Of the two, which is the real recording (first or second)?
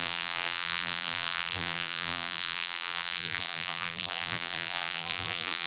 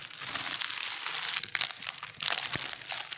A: second